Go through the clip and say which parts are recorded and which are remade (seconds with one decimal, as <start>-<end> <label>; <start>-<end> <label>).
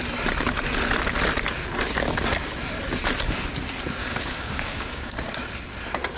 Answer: 0.0-4.0 recorded; 4.0-5.1 remade; 5.1-6.2 recorded